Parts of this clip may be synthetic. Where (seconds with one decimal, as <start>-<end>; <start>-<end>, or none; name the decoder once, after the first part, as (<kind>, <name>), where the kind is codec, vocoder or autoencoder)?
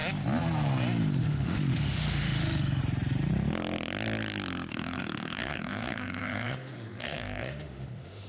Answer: 1.2-2.8 (autoencoder, DAC-VAE); 4.7-8.3